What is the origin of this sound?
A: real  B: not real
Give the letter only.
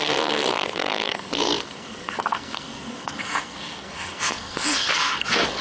B